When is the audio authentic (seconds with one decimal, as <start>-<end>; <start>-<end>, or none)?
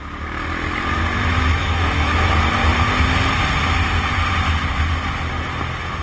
0.0-1.3; 2.3-6.0